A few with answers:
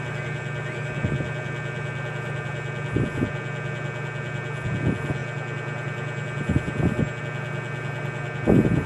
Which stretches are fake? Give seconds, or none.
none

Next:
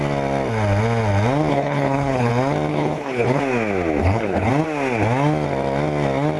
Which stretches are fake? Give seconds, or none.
1.5-2.3 (codec, HILCodec); 2.7-3.4; 4.0-4.5

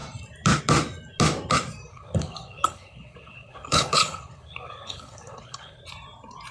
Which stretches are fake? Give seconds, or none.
1.9-5.8 (codec, HILCodec)

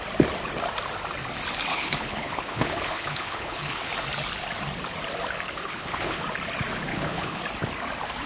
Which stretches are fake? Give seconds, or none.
1.7-3.9 (codec, HILCodec); 5.6-6.2; 6.9-7.4